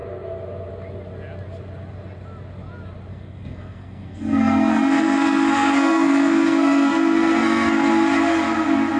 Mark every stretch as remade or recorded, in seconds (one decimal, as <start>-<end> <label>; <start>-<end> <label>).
0.0-3.1 recorded; 3.1-7.9 remade; 7.9-9.0 recorded